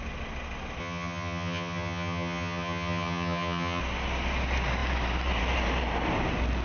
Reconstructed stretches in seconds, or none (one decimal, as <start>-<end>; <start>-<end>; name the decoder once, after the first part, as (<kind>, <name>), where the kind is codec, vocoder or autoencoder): 0.8-3.8 (vocoder, HiFi-GAN)